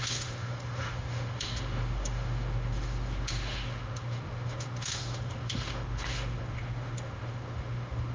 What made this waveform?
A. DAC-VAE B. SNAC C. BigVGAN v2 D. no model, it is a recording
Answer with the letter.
A